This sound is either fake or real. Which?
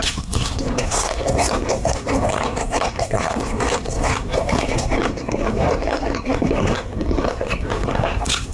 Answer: fake